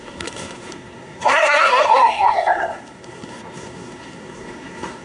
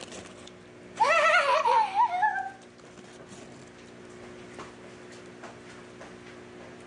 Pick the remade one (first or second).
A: first